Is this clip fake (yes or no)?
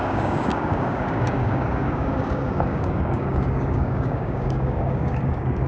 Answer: yes